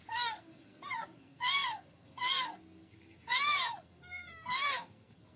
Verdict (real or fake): fake